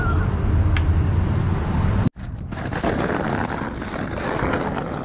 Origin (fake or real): real